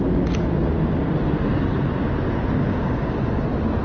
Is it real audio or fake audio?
real